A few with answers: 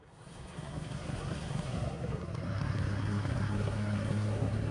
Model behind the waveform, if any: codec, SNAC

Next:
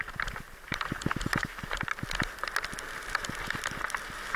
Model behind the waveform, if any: none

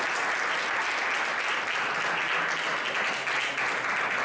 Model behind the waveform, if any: none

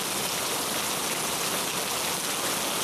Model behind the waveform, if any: none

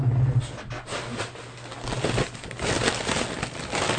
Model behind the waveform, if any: none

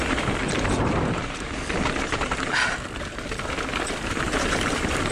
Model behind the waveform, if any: vocoder, BigVGAN v2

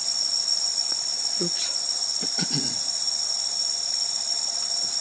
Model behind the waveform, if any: vocoder, Vocos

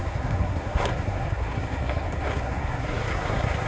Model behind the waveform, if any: codec, SNAC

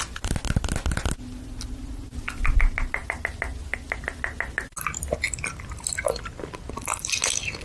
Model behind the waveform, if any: none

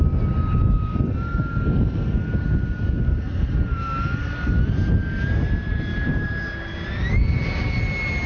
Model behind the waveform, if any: none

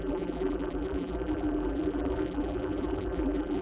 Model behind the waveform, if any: vocoder, BigVGAN v2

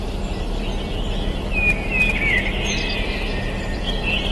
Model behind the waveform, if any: none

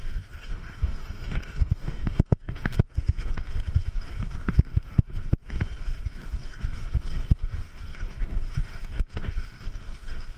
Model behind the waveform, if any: codec, DAC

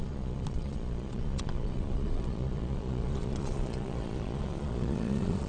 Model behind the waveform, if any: vocoder, Vocos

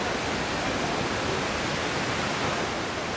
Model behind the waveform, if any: none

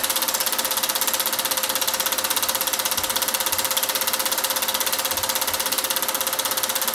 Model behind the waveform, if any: none